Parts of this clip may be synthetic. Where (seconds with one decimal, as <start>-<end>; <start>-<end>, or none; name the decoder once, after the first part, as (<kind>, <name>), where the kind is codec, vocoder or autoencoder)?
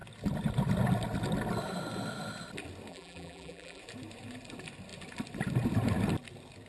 2.9-3.8 (vocoder, BigVGAN v2)